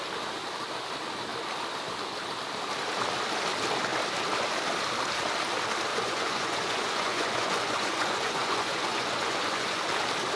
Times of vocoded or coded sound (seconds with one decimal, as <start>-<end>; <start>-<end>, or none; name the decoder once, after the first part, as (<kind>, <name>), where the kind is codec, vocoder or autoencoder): 5.9-9.8 (vocoder, Vocos)